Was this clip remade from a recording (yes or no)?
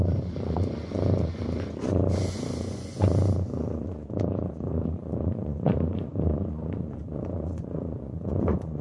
yes